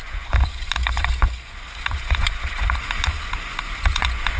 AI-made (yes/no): yes